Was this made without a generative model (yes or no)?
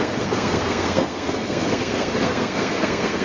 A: no